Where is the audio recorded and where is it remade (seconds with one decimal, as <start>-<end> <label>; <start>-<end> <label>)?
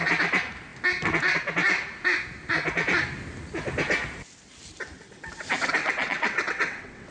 0.0-5.8 recorded; 5.8-7.1 remade